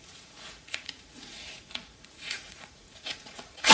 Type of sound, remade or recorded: remade